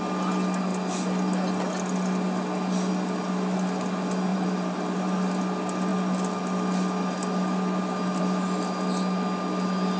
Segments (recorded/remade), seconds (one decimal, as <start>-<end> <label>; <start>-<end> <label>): 0.0-4.3 recorded; 4.3-5.0 remade; 5.0-10.0 recorded